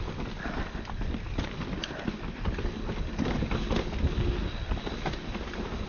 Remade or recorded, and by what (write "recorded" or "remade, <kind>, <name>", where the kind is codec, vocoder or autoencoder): recorded